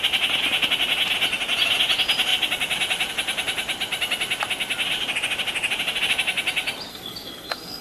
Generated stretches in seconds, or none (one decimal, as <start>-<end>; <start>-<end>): 6.9-7.8